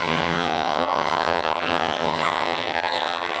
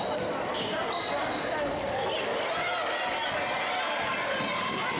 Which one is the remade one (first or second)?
first